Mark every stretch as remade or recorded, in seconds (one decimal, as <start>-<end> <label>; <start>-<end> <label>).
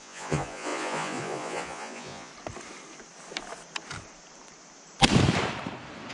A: 0.0-2.3 remade; 2.3-6.1 recorded